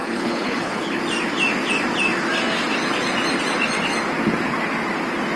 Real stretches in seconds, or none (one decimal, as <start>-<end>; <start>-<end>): 1.0-5.4